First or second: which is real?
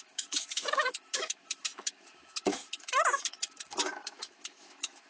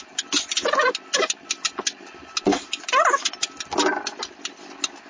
second